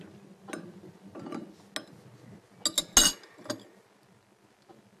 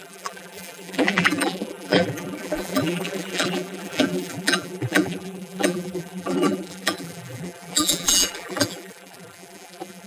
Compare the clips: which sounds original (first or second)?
first